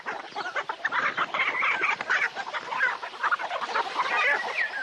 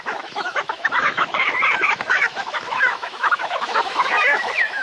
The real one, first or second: first